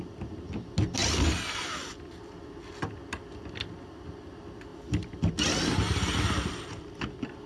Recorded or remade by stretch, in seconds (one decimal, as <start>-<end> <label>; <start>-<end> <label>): 0.0-7.5 recorded